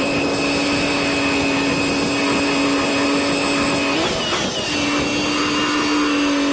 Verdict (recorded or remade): recorded